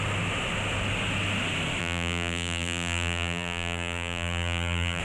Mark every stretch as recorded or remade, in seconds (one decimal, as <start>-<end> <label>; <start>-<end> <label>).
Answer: 0.0-1.8 recorded; 1.8-5.0 remade